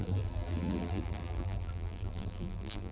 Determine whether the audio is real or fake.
fake